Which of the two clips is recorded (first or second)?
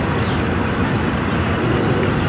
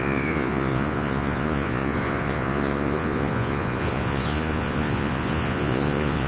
first